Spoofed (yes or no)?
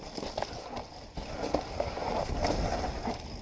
no